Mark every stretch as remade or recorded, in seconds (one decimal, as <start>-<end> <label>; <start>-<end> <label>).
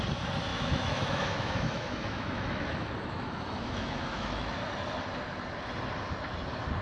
0.0-0.5 recorded; 0.5-4.6 remade; 4.6-6.8 recorded